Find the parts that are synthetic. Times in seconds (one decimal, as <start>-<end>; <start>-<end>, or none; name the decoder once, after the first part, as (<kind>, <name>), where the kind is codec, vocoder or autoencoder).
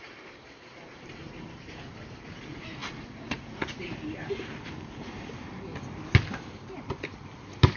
0.0-5.7 (vocoder, BigVGAN v2)